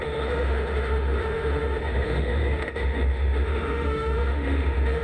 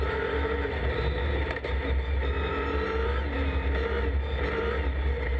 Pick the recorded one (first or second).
second